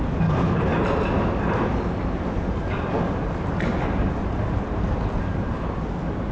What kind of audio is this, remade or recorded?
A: recorded